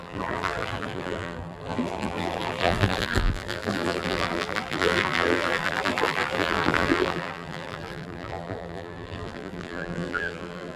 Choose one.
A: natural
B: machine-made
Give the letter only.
B